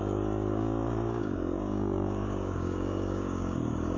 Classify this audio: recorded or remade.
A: remade